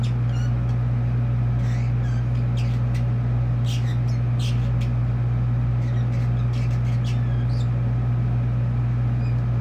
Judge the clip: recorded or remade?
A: recorded